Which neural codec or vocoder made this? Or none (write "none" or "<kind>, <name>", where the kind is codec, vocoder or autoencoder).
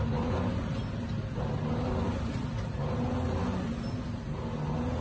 none